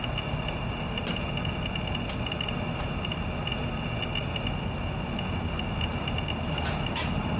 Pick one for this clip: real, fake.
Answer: real